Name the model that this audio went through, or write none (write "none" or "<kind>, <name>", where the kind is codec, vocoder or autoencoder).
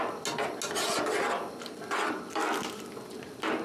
none